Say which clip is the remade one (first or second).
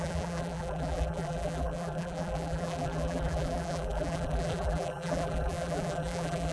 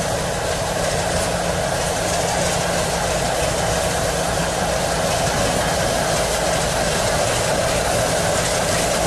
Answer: first